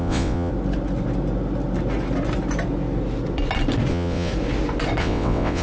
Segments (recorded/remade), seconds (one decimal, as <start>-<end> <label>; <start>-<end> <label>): 0.0-0.5 remade; 0.5-3.9 recorded; 3.9-4.3 remade; 4.3-5.0 recorded; 5.0-5.6 remade